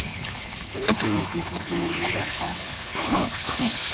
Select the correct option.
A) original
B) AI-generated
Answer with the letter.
B